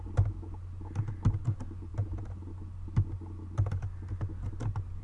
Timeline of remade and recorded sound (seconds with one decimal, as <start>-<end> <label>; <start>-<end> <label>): 0.0-5.0 recorded